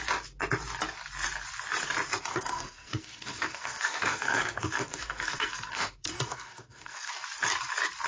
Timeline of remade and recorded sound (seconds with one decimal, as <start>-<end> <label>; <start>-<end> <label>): 0.0-2.3 recorded; 2.3-7.1 remade; 7.1-8.1 recorded